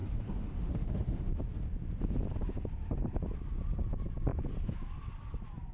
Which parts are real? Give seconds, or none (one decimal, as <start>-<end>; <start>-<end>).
1.3-5.7